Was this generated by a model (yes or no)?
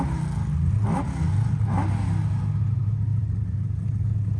no